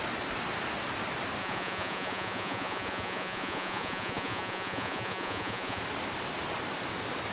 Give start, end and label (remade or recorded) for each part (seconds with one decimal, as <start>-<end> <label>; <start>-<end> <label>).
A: 0.0-1.4 recorded; 1.4-5.8 remade; 5.8-7.3 recorded